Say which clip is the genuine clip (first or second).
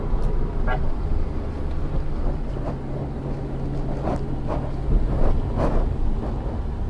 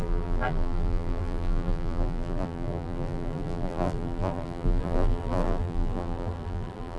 first